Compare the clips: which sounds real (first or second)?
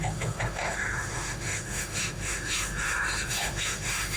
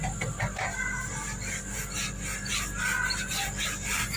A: second